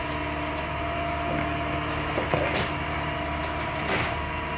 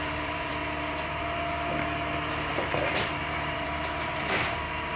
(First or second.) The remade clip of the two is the second